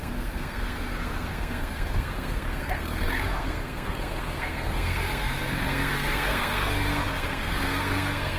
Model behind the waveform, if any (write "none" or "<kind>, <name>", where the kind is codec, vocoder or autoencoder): codec, SNAC